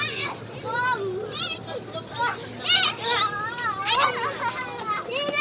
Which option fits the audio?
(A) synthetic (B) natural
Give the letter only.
B